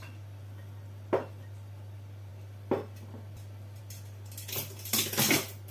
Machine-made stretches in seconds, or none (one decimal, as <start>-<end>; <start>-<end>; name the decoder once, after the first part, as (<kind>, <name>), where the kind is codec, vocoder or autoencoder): none